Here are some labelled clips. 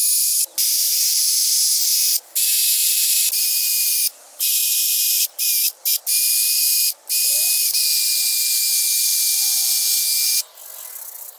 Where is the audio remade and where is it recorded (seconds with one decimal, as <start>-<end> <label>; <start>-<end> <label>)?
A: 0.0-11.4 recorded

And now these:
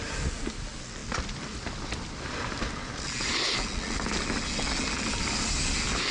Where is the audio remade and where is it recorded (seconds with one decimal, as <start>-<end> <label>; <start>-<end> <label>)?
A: 0.0-6.1 recorded

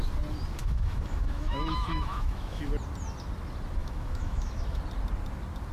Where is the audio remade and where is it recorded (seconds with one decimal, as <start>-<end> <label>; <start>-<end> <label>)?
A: 0.0-0.6 recorded; 0.6-2.6 remade; 2.6-3.8 recorded; 3.8-4.8 remade; 4.8-5.7 recorded

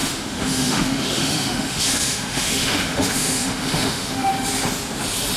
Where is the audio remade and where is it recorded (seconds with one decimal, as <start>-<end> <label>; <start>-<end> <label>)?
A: 0.0-4.3 remade; 4.3-5.4 recorded

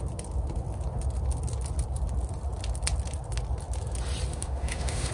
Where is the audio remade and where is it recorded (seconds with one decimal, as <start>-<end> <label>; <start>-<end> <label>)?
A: 0.0-4.3 recorded; 4.3-5.1 remade